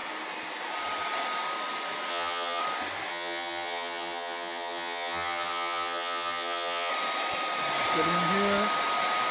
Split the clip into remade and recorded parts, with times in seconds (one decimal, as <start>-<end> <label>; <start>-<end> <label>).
0.0-2.1 recorded; 2.1-2.6 remade; 2.6-3.1 recorded; 3.1-6.9 remade; 6.9-9.3 recorded